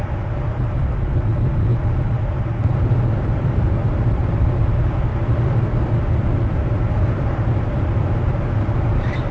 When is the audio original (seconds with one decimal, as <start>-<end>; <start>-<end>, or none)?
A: 1.7-2.4; 5.1-6.5